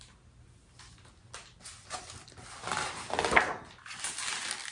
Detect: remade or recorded recorded